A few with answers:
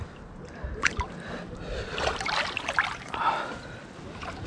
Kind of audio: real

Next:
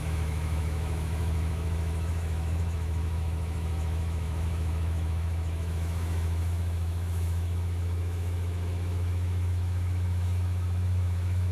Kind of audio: fake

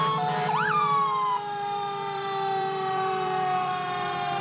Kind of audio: fake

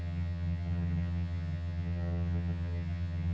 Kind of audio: fake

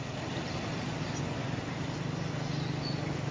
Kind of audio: real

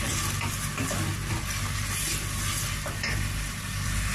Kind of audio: real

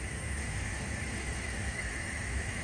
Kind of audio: fake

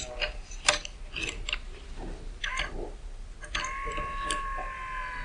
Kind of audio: real